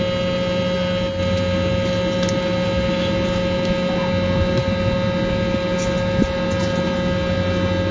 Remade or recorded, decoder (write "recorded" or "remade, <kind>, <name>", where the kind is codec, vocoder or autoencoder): recorded